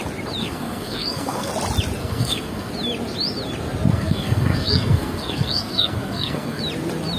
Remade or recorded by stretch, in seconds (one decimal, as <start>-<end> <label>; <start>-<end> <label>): 0.0-0.4 recorded; 0.4-1.5 remade; 1.5-2.0 recorded; 2.0-2.7 remade; 2.7-3.9 recorded; 3.9-6.6 remade; 6.6-7.2 recorded